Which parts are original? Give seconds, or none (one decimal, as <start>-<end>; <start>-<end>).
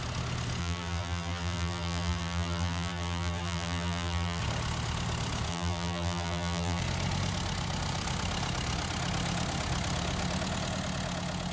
0.0-0.6; 4.4-5.5; 6.8-11.5